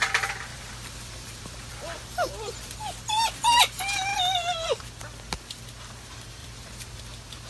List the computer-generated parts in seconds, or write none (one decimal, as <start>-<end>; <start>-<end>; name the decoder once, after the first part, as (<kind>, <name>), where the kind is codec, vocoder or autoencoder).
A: 0.5-3.6 (vocoder, BigVGAN v2); 4.1-5.0; 6.4-7.0